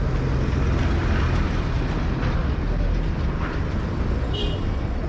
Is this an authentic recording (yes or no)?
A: yes